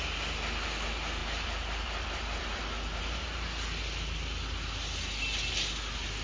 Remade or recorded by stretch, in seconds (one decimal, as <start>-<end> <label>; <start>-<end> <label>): 0.0-1.2 recorded; 1.2-3.0 remade; 3.0-6.2 recorded